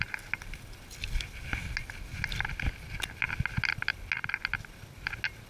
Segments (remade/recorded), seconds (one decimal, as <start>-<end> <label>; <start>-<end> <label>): 0.0-5.5 recorded